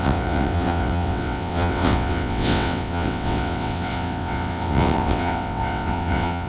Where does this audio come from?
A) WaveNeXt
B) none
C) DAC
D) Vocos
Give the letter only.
A